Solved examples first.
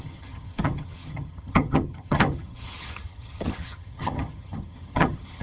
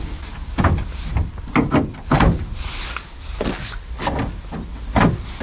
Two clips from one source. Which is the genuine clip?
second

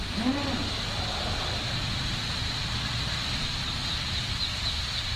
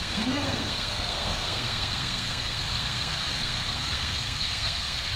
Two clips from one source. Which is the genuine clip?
first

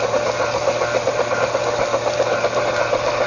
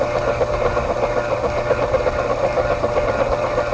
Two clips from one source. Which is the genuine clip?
second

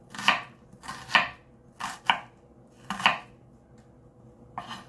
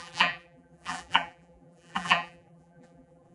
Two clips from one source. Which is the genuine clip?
first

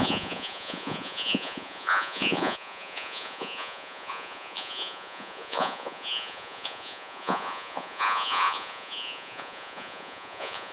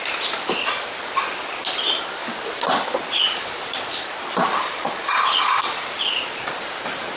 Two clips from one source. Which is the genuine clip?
second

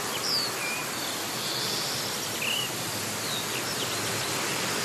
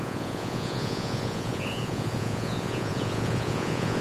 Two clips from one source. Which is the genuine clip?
first